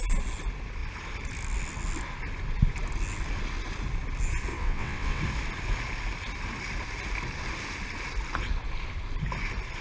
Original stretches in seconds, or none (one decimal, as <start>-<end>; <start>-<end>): 0.0-4.5; 5.2-9.8